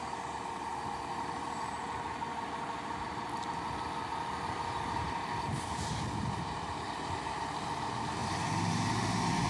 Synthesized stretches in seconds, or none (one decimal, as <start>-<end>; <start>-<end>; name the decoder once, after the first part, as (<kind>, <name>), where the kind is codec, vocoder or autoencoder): 5.0-6.1 (vocoder, BigVGAN v2); 8.2-9.5